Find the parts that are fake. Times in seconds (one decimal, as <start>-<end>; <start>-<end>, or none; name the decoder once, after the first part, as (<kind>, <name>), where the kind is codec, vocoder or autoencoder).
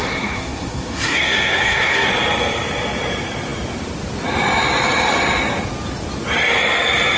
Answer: 0.0-2.1 (codec, SNAC)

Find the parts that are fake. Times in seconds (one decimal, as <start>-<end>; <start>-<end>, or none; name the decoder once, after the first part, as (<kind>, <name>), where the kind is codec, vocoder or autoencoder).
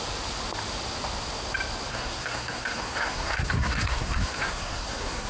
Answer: 1.9-5.3 (codec, SNAC)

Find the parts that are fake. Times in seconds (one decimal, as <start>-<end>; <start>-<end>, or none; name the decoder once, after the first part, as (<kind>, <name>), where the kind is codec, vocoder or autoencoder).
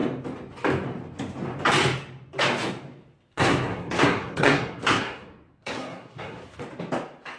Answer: 3.3-6.6 (codec, SNAC)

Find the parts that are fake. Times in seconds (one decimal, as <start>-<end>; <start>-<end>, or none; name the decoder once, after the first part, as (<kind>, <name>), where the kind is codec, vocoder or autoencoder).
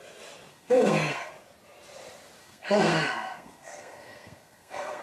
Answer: 0.5-1.3 (codec, SNAC); 2.4-5.0